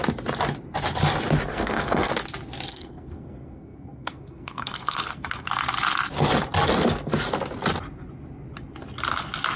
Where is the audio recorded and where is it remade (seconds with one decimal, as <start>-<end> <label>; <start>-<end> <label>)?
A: 0.0-1.5 recorded; 1.5-2.1 remade; 2.1-2.7 recorded; 2.7-5.5 remade; 5.5-9.6 recorded